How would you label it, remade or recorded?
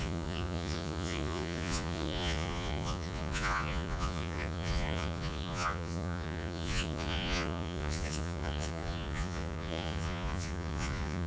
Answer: remade